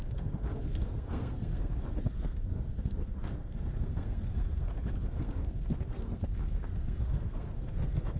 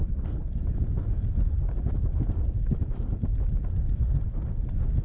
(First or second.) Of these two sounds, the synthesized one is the first